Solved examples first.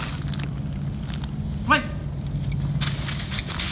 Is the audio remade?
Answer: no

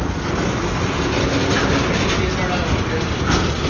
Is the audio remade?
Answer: no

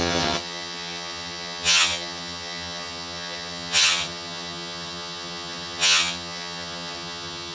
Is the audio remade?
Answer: yes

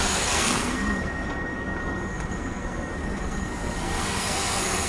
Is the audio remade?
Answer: yes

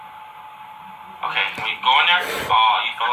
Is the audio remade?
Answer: no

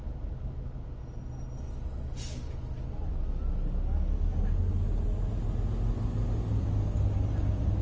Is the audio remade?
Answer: no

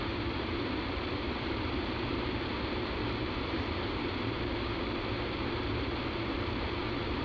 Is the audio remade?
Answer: yes